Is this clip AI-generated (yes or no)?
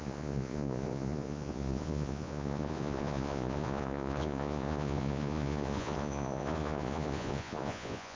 yes